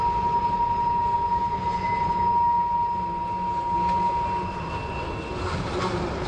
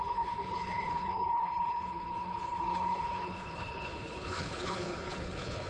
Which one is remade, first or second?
second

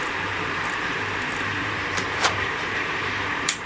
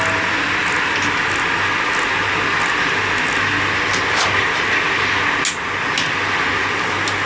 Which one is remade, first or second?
first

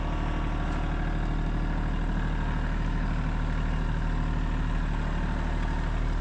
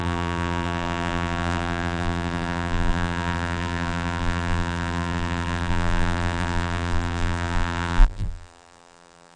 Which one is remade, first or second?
second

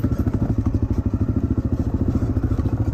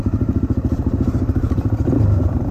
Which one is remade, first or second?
second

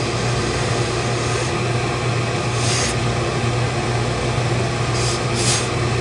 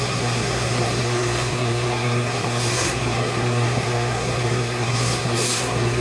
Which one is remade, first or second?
second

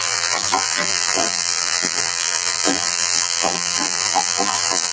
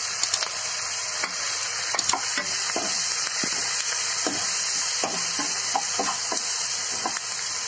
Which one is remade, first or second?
first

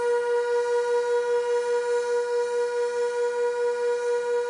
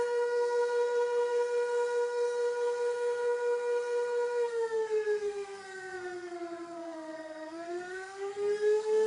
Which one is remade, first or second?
second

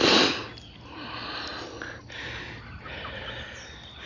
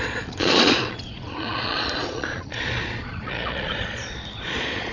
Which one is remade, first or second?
second